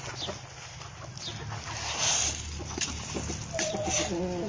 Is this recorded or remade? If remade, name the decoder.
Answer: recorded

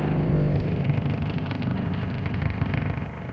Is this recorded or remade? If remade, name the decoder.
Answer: remade, codec, ZipCodec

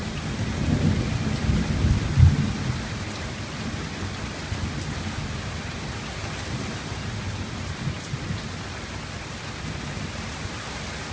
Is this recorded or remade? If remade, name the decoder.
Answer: recorded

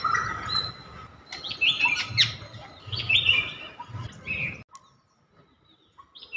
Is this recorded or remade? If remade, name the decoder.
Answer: recorded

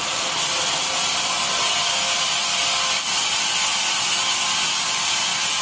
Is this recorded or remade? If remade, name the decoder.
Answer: recorded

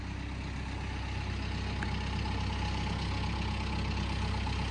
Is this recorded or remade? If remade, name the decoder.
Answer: recorded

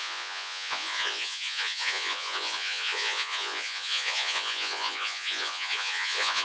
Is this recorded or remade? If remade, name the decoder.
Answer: remade, vocoder, Vocos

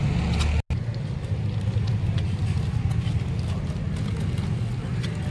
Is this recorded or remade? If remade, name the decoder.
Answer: recorded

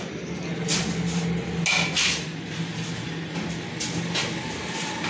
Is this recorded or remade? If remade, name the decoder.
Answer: recorded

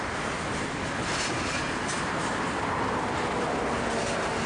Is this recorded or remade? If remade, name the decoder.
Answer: recorded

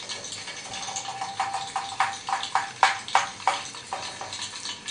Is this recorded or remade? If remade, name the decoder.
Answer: recorded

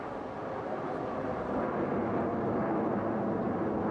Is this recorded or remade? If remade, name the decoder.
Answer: recorded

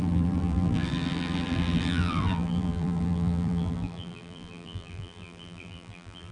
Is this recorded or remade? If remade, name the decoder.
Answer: remade, vocoder, BigVGAN v2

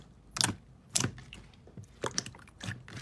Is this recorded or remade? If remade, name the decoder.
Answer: recorded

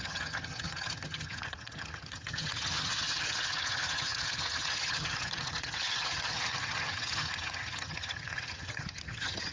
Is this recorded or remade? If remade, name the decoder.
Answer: remade, vocoder, HiFi-GAN